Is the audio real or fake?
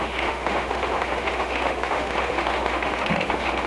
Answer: fake